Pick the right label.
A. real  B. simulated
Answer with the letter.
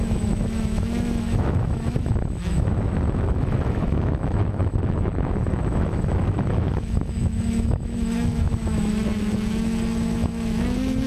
B